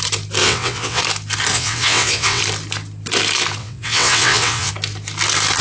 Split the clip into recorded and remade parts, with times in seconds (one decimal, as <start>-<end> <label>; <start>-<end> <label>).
0.0-0.4 recorded; 0.4-1.0 remade; 1.0-1.5 recorded; 1.5-2.4 remade; 2.4-3.6 recorded; 3.6-4.7 remade; 4.7-5.6 recorded